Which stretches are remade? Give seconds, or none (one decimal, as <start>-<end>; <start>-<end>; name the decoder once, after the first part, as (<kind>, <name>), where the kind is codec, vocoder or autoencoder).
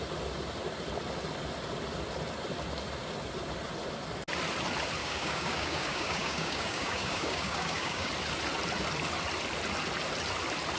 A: 5.0-8.1 (codec, DAC)